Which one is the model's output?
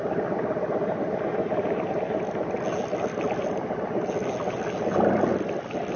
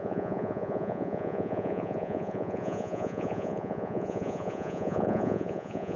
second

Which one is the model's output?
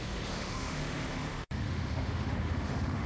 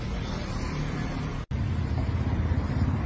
first